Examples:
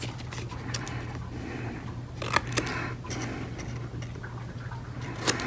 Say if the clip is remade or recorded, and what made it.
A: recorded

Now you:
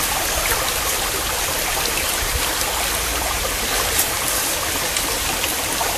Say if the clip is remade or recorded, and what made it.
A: recorded